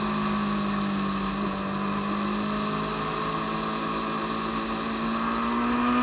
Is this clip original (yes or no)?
yes